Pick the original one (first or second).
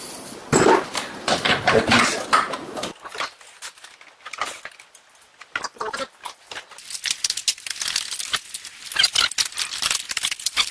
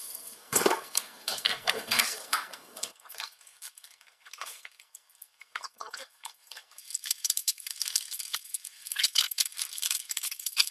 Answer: first